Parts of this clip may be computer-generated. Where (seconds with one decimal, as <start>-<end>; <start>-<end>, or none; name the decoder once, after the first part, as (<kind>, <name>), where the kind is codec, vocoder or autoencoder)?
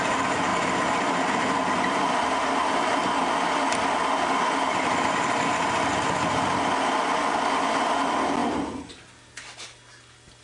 none